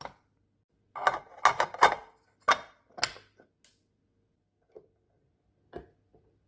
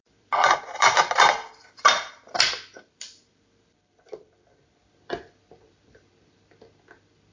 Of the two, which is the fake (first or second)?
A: second